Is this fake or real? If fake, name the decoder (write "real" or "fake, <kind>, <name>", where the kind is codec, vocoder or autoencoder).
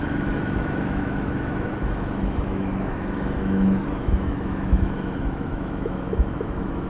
fake, autoencoder, DAC-VAE